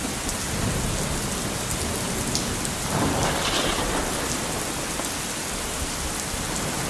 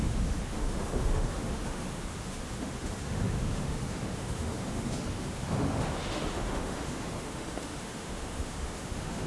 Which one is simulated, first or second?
second